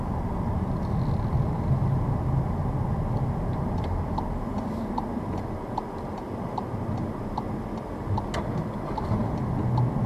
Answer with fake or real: real